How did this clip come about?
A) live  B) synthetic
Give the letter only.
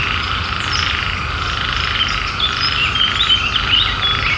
A